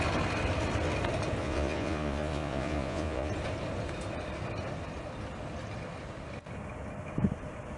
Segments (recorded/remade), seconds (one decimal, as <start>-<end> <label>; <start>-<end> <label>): 0.0-1.4 recorded; 1.4-3.3 remade; 3.3-7.8 recorded